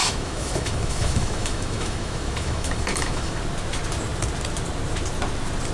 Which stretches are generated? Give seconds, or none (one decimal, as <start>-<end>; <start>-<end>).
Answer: 0.0-3.4